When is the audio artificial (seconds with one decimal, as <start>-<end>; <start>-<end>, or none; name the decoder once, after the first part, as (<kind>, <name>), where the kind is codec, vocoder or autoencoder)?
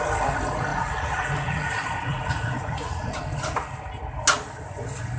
0.7-1.7 (vocoder, Vocos); 2.1-3.2